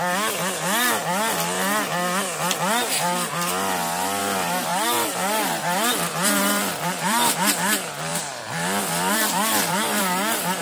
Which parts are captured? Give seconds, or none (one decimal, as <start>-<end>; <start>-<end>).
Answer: 0.0-4.7; 7.3-8.1; 10.0-10.6